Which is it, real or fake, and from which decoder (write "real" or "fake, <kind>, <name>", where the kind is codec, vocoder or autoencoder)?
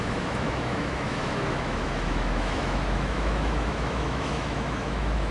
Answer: fake, autoencoder, DAC-VAE